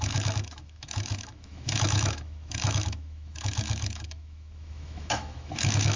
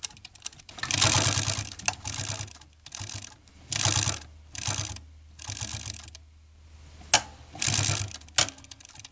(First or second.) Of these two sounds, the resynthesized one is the first